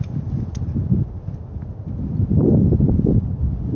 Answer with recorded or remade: recorded